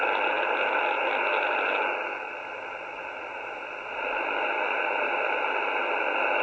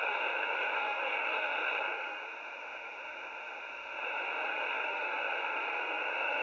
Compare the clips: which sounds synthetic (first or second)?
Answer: second